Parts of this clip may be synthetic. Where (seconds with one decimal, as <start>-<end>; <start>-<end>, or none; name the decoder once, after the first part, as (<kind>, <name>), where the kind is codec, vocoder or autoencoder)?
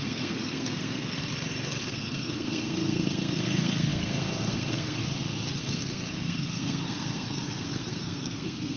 0.0-1.2 (codec, SNAC); 1.8-5.0; 5.6-8.8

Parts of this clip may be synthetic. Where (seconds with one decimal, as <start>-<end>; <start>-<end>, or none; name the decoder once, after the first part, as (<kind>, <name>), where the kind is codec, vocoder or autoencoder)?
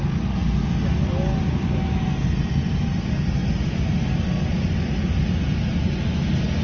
none